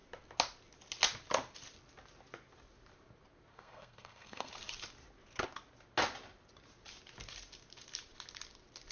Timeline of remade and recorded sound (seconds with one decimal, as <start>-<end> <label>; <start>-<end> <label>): 0.0-3.5 recorded; 3.5-4.5 remade; 4.5-8.9 recorded